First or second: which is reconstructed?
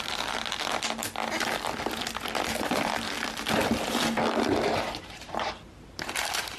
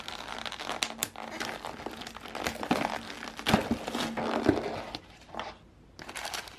first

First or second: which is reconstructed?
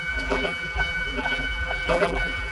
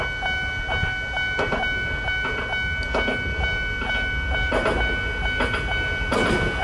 first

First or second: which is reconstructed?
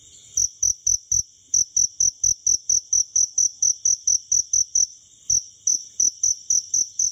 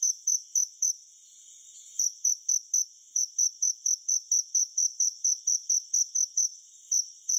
second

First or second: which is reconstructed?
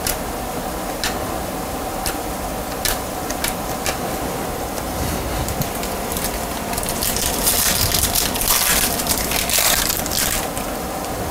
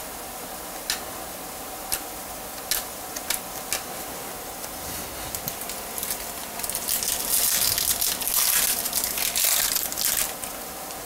first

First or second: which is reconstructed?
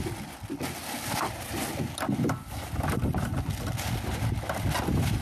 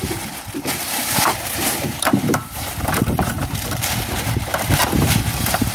second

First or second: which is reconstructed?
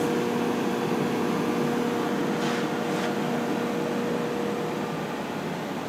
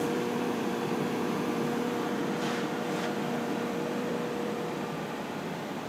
second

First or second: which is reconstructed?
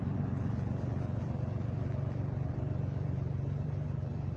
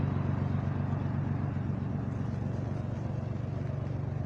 first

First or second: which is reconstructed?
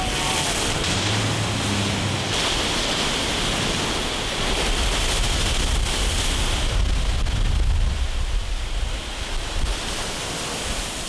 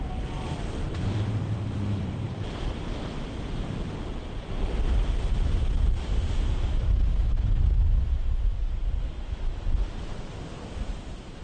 second